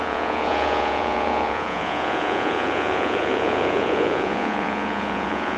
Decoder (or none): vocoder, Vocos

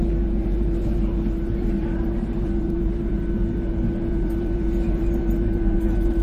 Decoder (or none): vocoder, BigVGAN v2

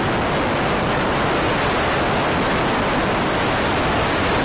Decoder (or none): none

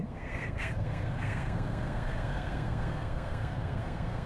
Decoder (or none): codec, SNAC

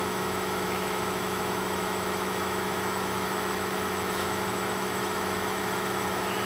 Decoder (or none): autoencoder, DAC-VAE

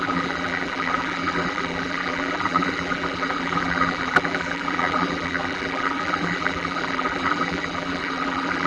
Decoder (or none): vocoder, BigVGAN v2